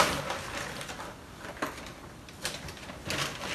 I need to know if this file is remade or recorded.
recorded